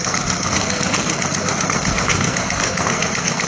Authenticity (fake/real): fake